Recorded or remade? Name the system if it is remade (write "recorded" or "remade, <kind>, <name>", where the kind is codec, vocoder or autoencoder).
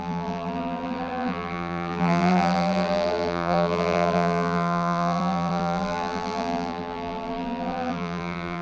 remade, vocoder, BigVGAN v2